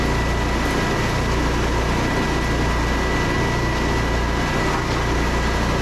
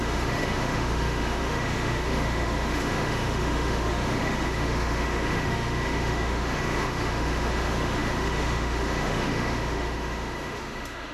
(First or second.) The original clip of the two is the first